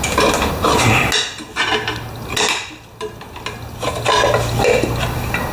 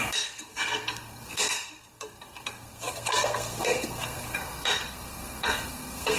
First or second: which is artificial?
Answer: second